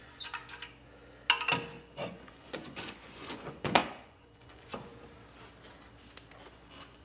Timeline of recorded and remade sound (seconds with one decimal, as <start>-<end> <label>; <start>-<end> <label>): 0.0-0.4 remade; 0.4-1.8 recorded; 1.8-4.9 remade; 4.9-6.5 recorded; 6.5-7.0 remade